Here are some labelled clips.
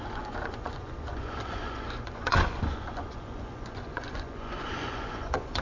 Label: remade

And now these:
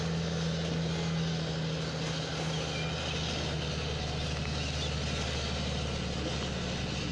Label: recorded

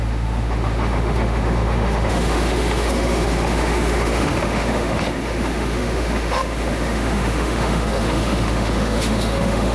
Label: remade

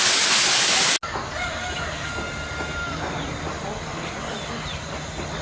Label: recorded